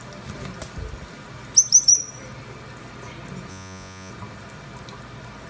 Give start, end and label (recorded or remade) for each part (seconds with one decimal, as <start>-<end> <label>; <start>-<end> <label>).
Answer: 0.0-3.5 recorded; 3.5-4.1 remade; 4.1-5.5 recorded